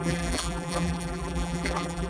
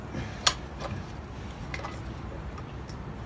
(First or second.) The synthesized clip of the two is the first